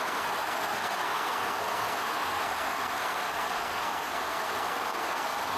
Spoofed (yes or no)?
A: yes